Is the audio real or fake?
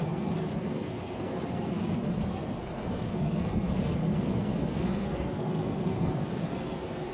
fake